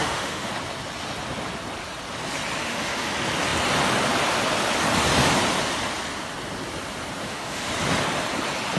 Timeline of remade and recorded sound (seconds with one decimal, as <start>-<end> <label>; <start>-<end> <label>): 0.0-0.5 remade; 0.5-2.6 recorded; 2.6-3.1 remade; 3.1-7.2 recorded; 7.2-7.7 remade; 7.7-8.8 recorded